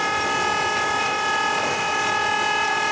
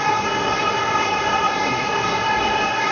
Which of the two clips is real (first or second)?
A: first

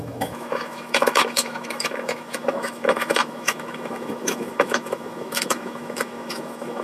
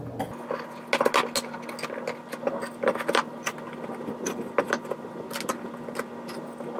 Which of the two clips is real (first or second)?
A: second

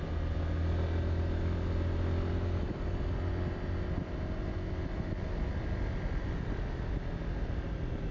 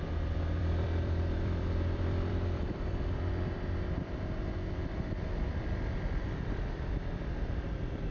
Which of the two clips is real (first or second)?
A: first